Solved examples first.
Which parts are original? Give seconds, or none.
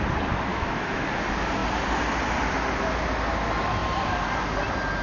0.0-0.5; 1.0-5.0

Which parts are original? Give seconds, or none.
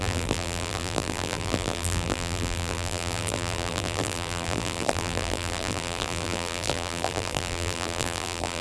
none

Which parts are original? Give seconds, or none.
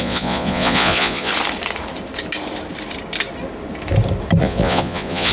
1.3-4.4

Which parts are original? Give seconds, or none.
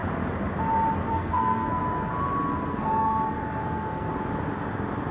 0.0-1.1; 1.8-2.7; 4.1-5.1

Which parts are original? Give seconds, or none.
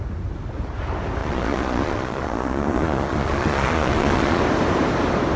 0.0-1.2; 4.4-5.4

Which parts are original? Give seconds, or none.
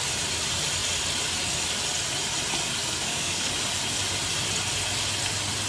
0.0-2.8; 3.5-5.7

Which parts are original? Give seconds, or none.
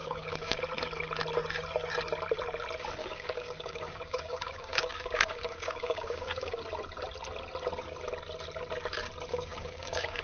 0.6-3.0; 6.6-9.3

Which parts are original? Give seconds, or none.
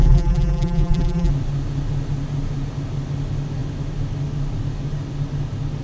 1.3-5.8